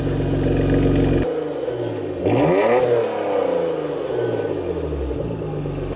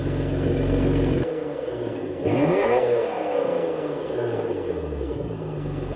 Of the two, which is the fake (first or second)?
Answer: second